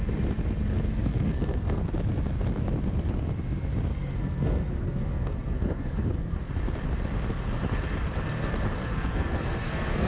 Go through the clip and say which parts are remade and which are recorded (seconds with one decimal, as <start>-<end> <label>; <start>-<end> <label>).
0.0-0.9 recorded; 0.9-1.8 remade; 1.8-3.9 recorded; 3.9-6.4 remade; 6.4-8.8 recorded; 8.8-10.1 remade